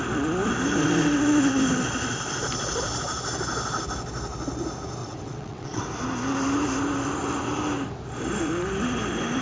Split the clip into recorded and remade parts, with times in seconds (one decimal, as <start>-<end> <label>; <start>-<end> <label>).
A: 0.0-5.0 recorded; 5.0-5.8 remade; 5.8-9.4 recorded